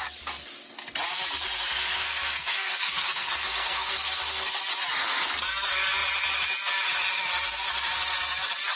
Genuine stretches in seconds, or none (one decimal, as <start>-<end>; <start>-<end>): 0.0-1.7; 4.6-8.8